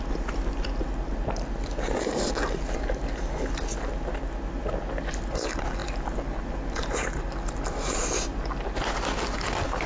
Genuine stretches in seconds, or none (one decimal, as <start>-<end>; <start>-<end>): 0.0-9.9